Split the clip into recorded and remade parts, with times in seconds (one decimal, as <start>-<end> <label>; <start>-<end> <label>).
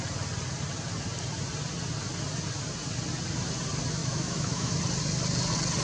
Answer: 0.0-4.0 recorded; 4.0-4.8 remade; 4.8-5.8 recorded